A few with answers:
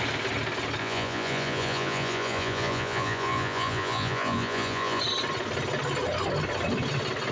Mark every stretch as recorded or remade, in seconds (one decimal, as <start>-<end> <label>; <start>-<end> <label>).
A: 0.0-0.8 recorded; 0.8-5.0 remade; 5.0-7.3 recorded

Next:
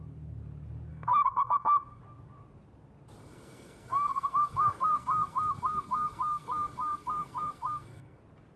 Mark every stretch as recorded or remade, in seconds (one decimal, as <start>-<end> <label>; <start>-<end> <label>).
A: 0.0-0.9 recorded; 0.9-2.0 remade; 2.0-3.2 recorded; 3.2-8.2 remade; 8.2-8.6 recorded

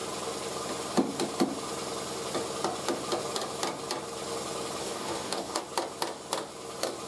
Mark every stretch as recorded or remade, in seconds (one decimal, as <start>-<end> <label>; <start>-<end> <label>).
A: 0.0-4.8 recorded; 4.8-5.6 remade; 5.6-7.1 recorded

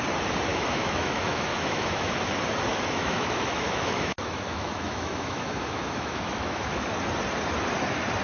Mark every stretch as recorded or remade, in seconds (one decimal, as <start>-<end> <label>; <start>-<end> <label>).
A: 0.0-0.5 recorded; 0.5-2.1 remade; 2.1-2.7 recorded; 2.7-6.9 remade; 6.9-8.2 recorded

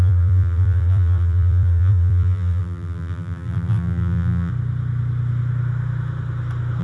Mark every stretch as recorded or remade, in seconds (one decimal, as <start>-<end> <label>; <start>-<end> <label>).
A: 0.0-4.5 remade; 4.5-6.8 recorded

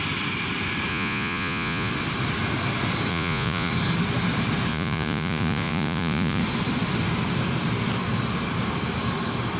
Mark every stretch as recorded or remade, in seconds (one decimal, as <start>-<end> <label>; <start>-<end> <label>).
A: 0.0-0.9 recorded; 0.9-1.9 remade; 1.9-3.1 recorded; 3.1-3.7 remade; 3.7-4.7 recorded; 4.7-6.4 remade; 6.4-9.6 recorded